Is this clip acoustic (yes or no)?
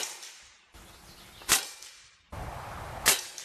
yes